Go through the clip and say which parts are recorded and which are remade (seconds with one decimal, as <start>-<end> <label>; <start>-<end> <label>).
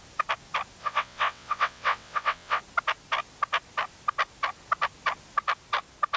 0.0-0.8 recorded; 0.8-2.6 remade; 2.6-6.2 recorded